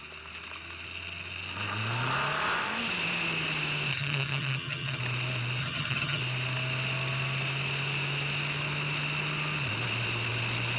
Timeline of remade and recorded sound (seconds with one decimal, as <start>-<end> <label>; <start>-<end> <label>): 0.0-3.9 recorded; 3.9-5.0 remade; 5.0-5.6 recorded; 5.6-6.2 remade; 6.2-10.8 recorded